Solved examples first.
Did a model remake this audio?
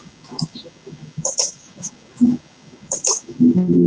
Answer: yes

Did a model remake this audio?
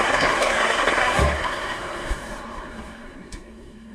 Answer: yes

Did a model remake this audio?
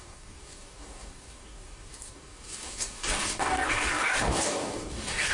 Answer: yes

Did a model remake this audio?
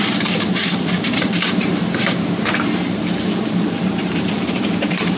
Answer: yes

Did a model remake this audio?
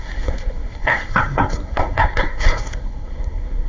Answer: yes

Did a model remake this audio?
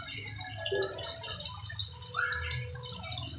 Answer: no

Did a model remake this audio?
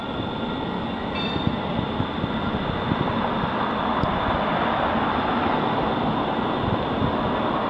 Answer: no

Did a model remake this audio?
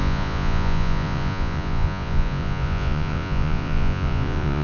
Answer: yes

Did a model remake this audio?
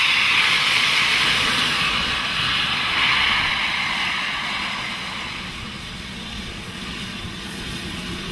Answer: yes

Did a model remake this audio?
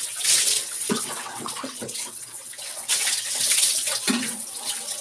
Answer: yes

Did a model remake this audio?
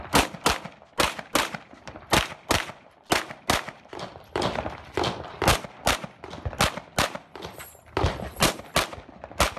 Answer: no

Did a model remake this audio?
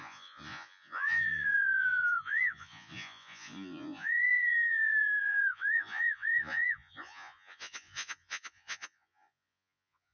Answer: yes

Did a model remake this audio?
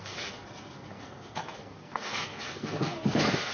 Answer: yes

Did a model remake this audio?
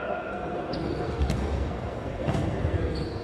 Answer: yes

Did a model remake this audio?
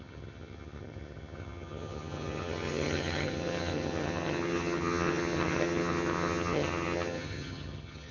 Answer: yes